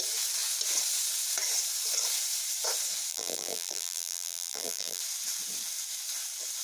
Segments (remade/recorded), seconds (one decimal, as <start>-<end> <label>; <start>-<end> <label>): 0.0-3.1 recorded; 3.1-5.0 remade; 5.0-6.6 recorded